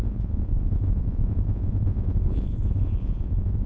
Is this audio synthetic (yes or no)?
yes